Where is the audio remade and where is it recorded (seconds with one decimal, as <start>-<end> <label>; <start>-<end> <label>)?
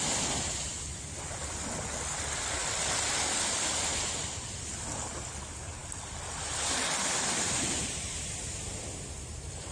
0.0-2.6 recorded; 2.6-4.7 remade; 4.7-5.8 recorded; 5.8-6.9 remade; 6.9-9.7 recorded